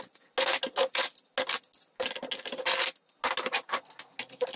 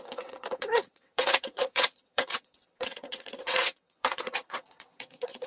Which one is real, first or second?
first